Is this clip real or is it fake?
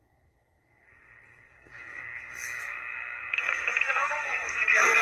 fake